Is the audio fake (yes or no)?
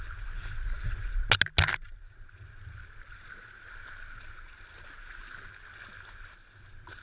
no